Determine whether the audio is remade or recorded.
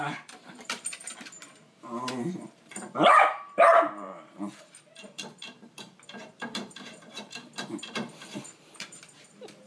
remade